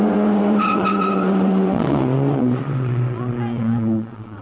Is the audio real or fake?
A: fake